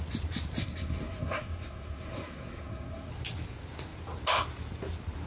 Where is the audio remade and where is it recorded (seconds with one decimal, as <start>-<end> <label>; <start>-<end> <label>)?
0.0-0.6 recorded; 0.6-3.1 remade; 3.1-5.3 recorded

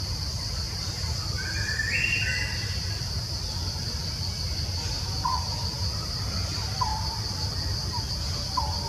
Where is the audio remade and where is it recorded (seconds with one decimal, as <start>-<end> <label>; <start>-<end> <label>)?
0.0-8.9 recorded

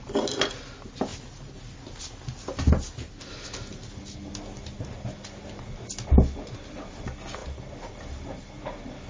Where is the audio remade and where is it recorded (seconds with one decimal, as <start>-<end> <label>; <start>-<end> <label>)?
0.0-9.1 recorded

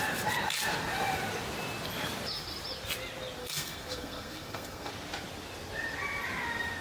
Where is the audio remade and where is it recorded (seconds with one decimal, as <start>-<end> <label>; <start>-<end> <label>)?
0.0-3.4 recorded; 3.4-4.9 remade; 4.9-6.8 recorded

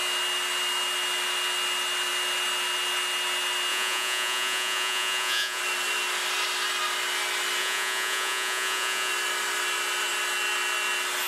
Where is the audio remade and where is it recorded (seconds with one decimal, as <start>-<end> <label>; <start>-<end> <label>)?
0.0-3.7 recorded; 3.7-5.6 remade; 5.6-7.6 recorded; 7.6-9.1 remade; 9.1-11.3 recorded

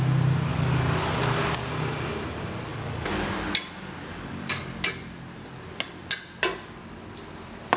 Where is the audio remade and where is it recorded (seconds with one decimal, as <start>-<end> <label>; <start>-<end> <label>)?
0.0-0.5 recorded; 0.5-1.7 remade; 1.7-2.7 recorded; 2.7-3.3 remade; 3.3-4.1 recorded; 4.1-4.6 remade; 4.6-7.8 recorded